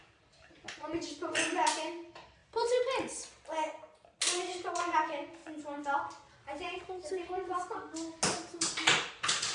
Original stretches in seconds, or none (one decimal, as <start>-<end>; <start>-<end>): 0.0-9.5